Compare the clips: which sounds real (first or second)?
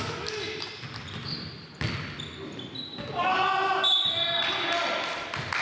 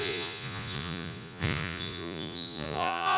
first